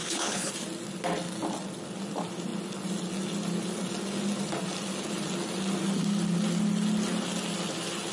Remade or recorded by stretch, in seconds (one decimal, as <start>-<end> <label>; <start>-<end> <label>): 0.0-0.5 remade; 0.5-8.1 recorded